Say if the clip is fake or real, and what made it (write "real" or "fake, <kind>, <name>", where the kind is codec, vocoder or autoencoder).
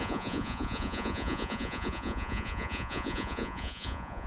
fake, vocoder, Vocos